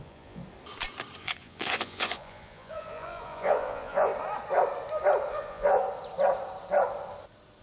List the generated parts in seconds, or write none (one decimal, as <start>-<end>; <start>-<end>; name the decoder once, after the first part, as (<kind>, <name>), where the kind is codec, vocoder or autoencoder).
0.0-0.4 (vocoder, Vocos); 1.2-4.1; 5.3-5.8

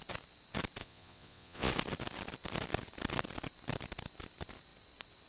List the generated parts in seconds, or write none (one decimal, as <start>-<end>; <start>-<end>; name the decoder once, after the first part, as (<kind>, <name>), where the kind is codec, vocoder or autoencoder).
0.8-1.7 (vocoder, Vocos)

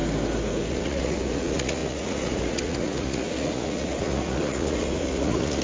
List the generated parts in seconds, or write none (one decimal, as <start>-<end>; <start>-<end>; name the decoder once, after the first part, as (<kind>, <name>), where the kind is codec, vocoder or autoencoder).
0.7-5.6 (vocoder, Vocos)

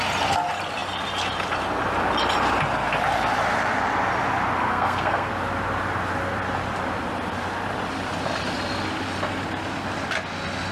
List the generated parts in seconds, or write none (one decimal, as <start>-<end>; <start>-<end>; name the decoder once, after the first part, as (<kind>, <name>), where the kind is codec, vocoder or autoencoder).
4.6-5.3 (codec, SNAC)

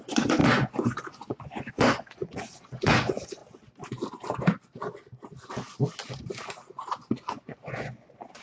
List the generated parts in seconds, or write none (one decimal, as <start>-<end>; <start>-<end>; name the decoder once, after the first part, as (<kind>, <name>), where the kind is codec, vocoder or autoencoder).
0.0-3.4 (vocoder, Vocos); 7.3-8.4

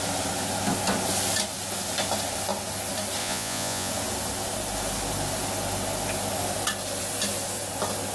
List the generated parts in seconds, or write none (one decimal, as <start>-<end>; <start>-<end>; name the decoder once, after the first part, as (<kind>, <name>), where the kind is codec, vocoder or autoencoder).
3.2-3.9 (vocoder, Vocos)

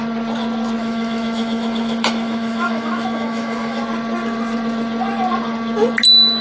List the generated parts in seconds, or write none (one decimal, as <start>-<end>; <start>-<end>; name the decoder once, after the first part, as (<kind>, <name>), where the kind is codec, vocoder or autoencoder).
0.8-3.8 (autoencoder, DAC-VAE)

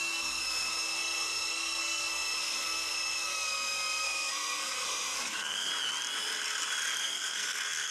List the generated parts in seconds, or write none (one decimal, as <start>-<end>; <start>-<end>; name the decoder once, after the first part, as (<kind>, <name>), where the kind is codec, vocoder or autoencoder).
0.0-5.7 (codec, SNAC); 7.0-7.9